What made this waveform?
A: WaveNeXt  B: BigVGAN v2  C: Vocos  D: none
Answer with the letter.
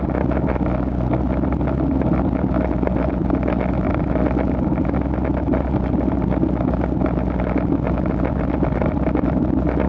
D